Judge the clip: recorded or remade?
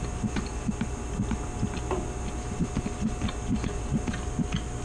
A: recorded